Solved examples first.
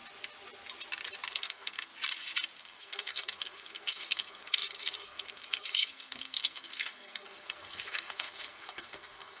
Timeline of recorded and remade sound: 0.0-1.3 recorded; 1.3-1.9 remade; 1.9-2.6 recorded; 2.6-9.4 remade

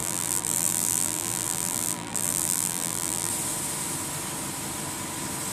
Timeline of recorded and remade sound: 0.0-3.3 remade; 3.3-5.5 recorded

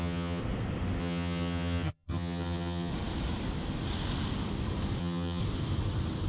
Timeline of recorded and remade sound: 0.0-0.4 remade; 0.4-1.0 recorded; 1.0-2.9 remade; 2.9-5.0 recorded; 5.0-5.4 remade; 5.4-6.3 recorded

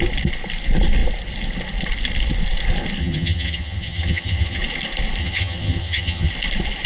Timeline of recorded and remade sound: 0.0-3.0 recorded; 3.0-4.6 remade; 4.6-5.2 recorded; 5.2-6.3 remade; 6.3-6.9 recorded

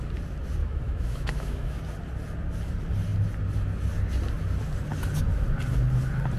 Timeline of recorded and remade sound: 0.0-0.6 recorded; 0.6-1.8 remade; 1.8-6.4 recorded